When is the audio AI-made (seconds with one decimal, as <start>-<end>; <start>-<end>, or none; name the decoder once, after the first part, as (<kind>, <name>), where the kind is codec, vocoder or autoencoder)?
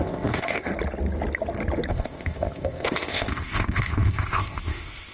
0.0-0.7 (codec, ZipCodec); 1.9-5.1